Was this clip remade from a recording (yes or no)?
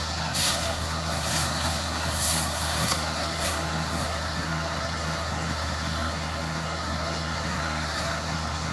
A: yes